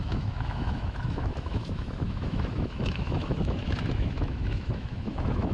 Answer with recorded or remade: remade